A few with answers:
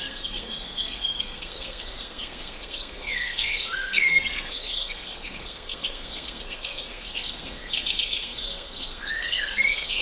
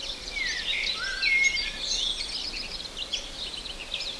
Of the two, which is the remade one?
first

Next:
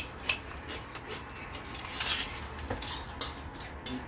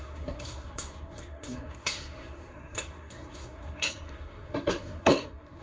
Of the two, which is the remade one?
second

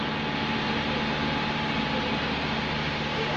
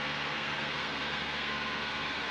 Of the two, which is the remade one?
second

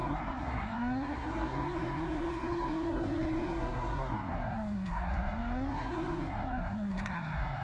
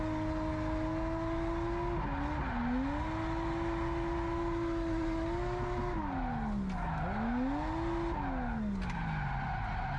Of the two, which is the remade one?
first